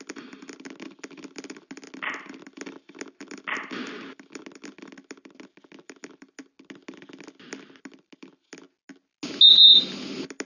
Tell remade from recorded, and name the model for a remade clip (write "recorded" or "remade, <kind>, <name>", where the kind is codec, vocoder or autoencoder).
recorded